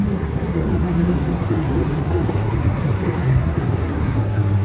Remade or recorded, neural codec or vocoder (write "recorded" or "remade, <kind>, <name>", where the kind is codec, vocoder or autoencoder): remade, codec, SNAC